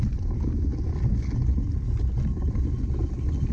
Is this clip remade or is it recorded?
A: recorded